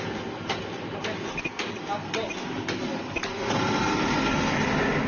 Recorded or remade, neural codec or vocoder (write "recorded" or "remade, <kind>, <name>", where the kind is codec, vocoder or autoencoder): recorded